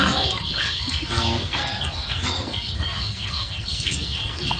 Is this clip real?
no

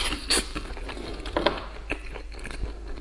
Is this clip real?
yes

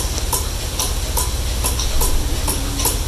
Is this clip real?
yes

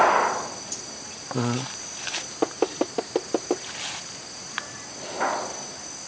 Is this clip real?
yes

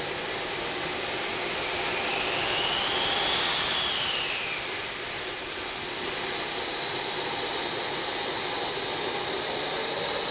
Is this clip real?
yes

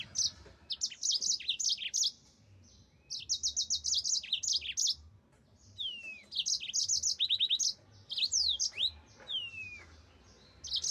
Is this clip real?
yes